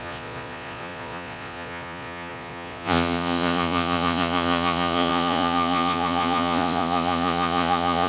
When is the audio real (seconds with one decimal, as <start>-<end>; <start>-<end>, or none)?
none

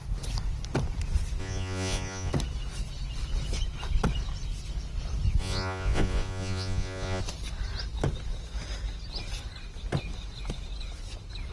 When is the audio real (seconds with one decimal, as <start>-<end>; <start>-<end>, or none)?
0.0-1.4; 2.3-5.4; 7.2-11.5

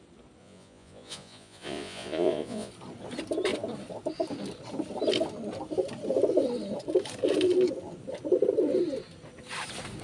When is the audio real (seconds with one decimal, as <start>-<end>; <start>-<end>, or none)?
0.0-0.4; 2.7-10.0

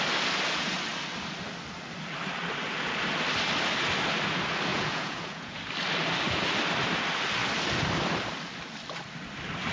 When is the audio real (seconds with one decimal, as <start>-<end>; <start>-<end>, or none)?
0.0-4.7; 5.6-9.7

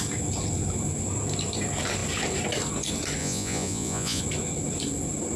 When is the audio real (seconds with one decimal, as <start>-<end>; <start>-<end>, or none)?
0.0-3.2; 4.2-5.4

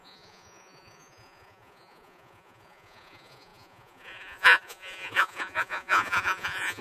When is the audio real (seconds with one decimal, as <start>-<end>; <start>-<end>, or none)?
none

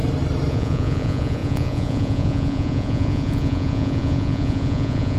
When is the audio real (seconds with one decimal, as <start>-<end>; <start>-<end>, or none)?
0.0-0.5

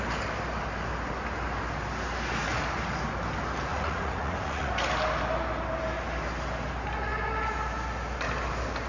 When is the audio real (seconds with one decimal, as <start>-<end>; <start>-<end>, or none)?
0.0-3.7; 4.7-8.9